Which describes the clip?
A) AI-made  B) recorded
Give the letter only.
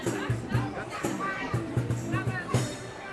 A